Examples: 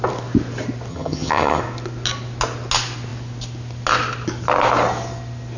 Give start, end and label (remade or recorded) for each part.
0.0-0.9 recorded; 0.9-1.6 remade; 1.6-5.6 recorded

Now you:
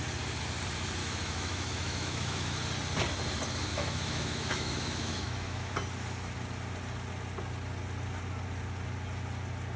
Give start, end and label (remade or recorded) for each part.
0.0-1.0 recorded; 1.0-2.6 remade; 2.6-3.7 recorded; 3.7-5.7 remade; 5.7-9.8 recorded

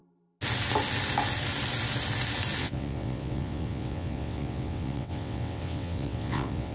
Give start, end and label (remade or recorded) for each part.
0.0-2.6 recorded; 2.6-6.7 remade